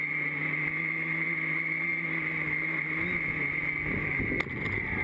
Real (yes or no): yes